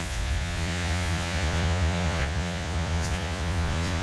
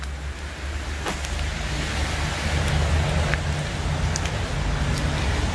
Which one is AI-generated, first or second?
first